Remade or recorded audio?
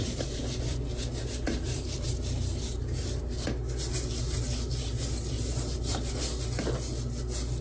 recorded